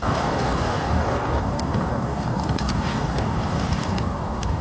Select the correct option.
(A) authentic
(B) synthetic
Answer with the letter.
B